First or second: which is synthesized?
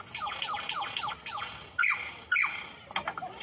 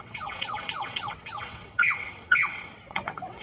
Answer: second